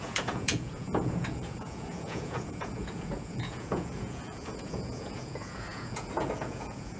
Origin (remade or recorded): remade